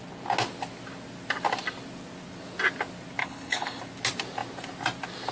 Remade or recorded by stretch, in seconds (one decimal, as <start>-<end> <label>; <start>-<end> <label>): 0.0-3.2 recorded; 3.2-3.8 remade; 3.8-5.3 recorded